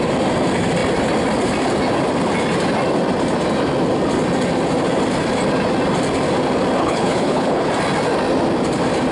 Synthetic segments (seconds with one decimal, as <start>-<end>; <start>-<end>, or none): 6.8-7.7